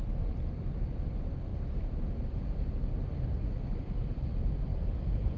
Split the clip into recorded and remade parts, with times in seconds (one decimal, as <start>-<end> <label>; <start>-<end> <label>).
0.0-1.5 remade; 1.5-3.5 recorded; 3.5-5.4 remade

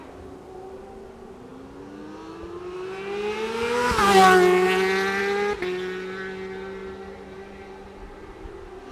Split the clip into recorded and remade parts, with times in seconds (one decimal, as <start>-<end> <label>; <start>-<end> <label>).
0.0-6.8 recorded; 6.8-8.9 remade

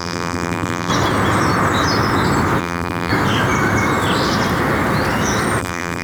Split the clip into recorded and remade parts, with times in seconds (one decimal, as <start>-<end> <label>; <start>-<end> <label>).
0.0-0.9 remade; 0.9-2.6 recorded; 2.6-3.1 remade; 3.1-5.6 recorded; 5.6-6.0 remade

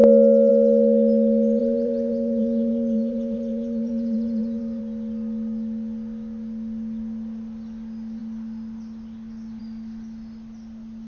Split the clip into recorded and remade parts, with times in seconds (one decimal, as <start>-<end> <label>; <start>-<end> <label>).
0.0-1.6 recorded; 1.6-4.8 remade; 4.8-11.1 recorded

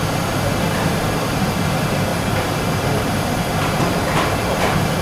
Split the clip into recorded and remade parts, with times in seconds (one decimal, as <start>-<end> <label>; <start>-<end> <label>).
0.0-0.9 recorded; 0.9-1.6 remade; 1.6-2.1 recorded; 2.1-4.6 remade; 4.6-5.0 recorded

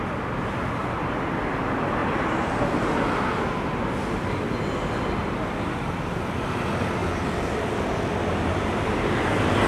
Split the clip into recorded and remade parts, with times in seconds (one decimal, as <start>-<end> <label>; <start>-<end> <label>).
0.0-9.7 recorded

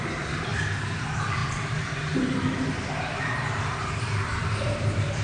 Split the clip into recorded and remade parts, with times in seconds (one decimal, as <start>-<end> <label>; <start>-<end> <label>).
0.0-1.4 remade; 1.4-3.8 recorded; 3.8-5.2 remade

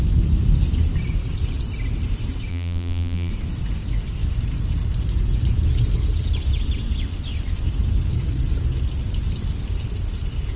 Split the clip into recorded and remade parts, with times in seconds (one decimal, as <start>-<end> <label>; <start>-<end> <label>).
0.0-2.5 recorded; 2.5-3.3 remade; 3.3-10.6 recorded